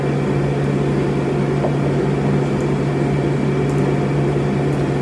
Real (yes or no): yes